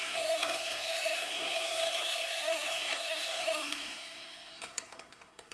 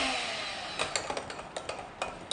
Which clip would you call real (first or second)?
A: second